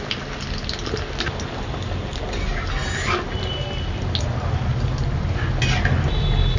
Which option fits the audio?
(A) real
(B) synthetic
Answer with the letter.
A